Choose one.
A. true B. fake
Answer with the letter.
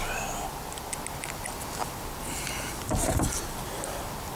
A